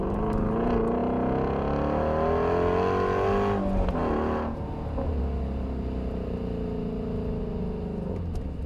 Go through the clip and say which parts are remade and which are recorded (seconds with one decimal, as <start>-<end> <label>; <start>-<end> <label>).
0.0-8.7 recorded